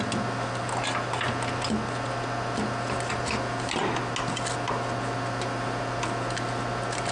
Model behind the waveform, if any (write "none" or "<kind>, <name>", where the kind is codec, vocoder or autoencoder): none